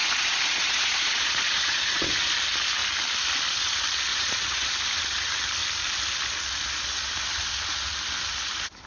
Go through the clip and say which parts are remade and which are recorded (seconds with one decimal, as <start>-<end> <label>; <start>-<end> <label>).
0.0-2.1 remade; 2.1-4.1 recorded; 4.1-4.7 remade; 4.7-8.9 recorded